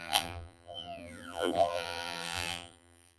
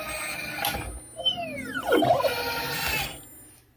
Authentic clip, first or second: second